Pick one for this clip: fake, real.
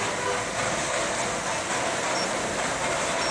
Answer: real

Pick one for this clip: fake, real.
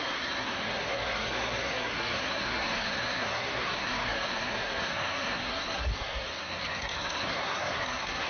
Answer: fake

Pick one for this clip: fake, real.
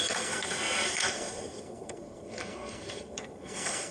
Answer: fake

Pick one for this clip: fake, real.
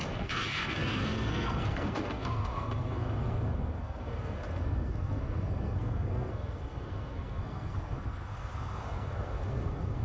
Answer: fake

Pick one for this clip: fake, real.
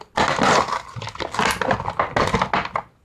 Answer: real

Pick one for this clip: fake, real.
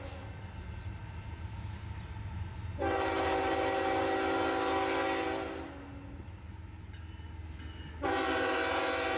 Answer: real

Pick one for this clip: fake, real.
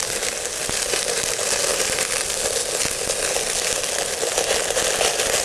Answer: real